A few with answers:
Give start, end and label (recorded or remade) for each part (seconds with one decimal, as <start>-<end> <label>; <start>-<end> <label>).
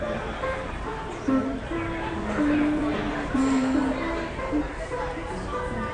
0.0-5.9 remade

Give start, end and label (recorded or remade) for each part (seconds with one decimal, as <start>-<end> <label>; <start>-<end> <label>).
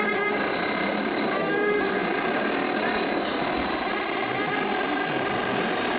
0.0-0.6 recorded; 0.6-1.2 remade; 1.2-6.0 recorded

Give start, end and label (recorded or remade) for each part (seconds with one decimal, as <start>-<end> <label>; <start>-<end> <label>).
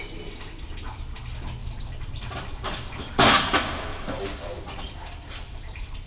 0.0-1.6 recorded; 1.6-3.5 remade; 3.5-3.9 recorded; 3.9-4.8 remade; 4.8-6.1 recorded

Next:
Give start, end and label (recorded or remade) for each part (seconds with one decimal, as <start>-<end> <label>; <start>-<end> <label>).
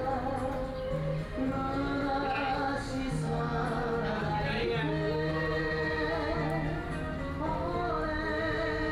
0.0-8.9 recorded